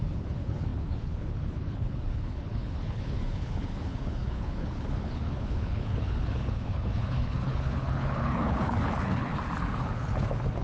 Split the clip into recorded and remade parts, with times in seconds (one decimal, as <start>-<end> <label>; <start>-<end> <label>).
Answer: 0.0-9.3 remade; 9.3-9.8 recorded; 9.8-10.6 remade